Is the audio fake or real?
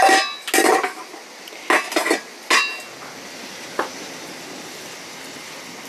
real